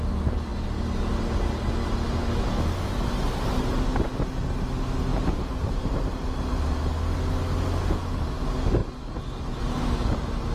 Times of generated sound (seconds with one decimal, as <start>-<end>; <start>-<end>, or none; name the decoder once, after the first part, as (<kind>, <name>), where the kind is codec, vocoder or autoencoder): none